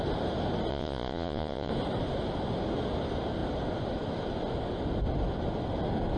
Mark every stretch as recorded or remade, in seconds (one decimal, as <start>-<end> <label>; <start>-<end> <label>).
0.0-0.7 recorded; 0.7-1.7 remade; 1.7-6.2 recorded